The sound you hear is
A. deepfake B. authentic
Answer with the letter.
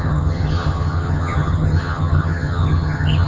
A